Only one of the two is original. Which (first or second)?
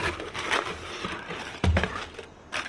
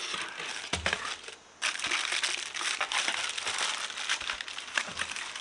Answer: second